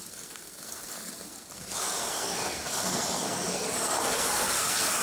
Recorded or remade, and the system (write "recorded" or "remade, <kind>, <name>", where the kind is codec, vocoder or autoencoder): remade, codec, SNAC